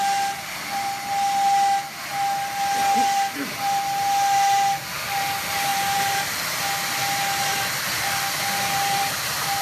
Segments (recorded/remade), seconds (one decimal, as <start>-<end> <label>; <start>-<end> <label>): 0.0-5.7 recorded; 5.7-6.3 remade; 6.3-9.6 recorded